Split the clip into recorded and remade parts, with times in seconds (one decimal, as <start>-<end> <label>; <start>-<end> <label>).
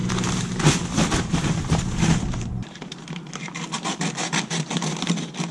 0.0-3.3 remade; 3.3-5.5 recorded